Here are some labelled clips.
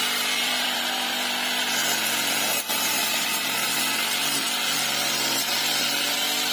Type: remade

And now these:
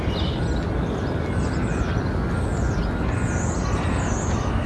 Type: recorded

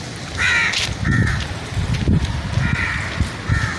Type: recorded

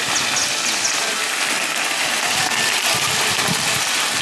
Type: recorded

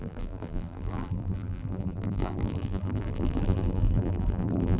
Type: remade